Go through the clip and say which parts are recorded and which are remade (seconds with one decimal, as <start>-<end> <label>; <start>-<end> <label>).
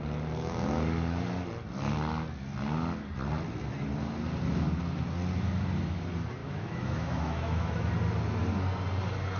0.0-6.4 recorded; 6.4-7.9 remade; 7.9-9.4 recorded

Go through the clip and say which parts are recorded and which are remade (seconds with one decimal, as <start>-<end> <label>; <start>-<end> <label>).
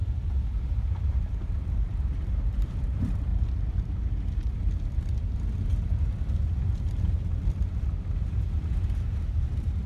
0.0-1.3 recorded; 1.3-3.3 remade; 3.3-8.2 recorded; 8.2-9.9 remade